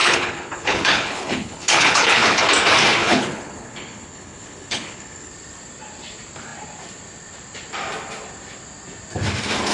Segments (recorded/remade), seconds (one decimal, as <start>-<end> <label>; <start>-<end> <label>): 0.0-2.4 remade; 2.4-3.0 recorded; 3.0-5.3 remade; 5.3-9.7 recorded